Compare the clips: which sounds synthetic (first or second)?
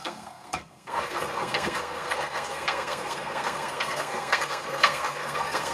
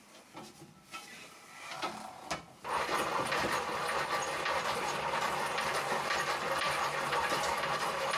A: first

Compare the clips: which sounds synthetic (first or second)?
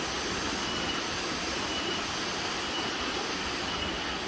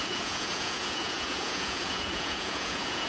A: second